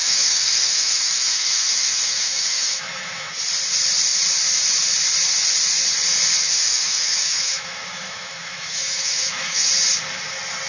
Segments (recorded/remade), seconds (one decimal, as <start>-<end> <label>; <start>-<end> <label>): 0.0-3.3 remade; 3.3-6.4 recorded; 6.4-9.7 remade; 9.7-10.7 recorded